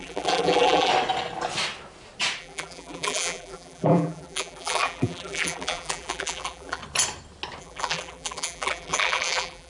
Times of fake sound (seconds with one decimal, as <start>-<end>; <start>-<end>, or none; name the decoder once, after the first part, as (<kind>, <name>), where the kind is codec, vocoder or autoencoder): 0.0-0.9 (vocoder, BigVGAN v2); 2.4-6.8; 7.6-9.7